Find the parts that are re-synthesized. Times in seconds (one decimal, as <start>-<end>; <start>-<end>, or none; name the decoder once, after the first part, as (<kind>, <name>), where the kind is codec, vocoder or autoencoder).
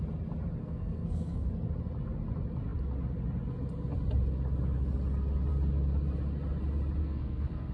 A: 0.6-1.5 (codec, SNAC); 7.0-7.7